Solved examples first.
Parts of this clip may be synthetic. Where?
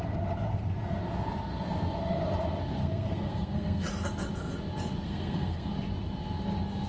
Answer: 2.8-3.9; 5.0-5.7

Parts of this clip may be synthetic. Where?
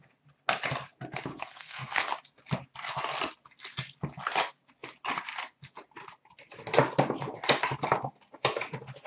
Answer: 1.3-2.1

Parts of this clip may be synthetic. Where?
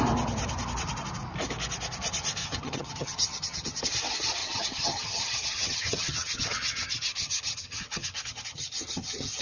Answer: 2.4-3.8; 4.4-9.4